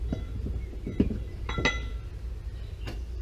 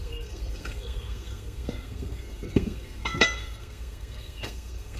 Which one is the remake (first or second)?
second